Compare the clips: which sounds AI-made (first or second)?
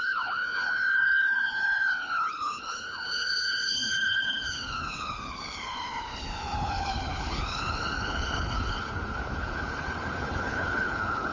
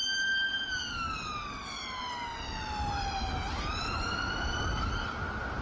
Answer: first